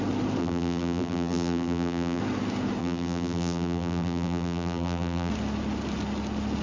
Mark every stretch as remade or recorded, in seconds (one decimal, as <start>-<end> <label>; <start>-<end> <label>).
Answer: 0.0-0.4 recorded; 0.4-2.2 remade; 2.2-2.8 recorded; 2.8-5.3 remade; 5.3-6.6 recorded